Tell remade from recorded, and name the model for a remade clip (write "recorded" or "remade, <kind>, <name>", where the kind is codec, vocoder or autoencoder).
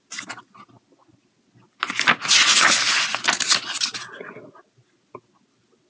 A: recorded